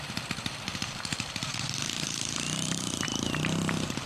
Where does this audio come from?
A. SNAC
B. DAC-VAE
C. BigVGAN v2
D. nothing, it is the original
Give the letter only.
C